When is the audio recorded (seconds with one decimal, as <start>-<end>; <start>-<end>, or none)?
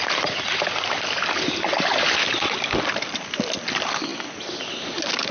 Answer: 0.0-2.2; 3.6-5.3